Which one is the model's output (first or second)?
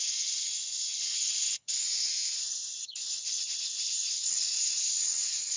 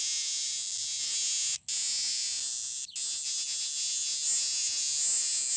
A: first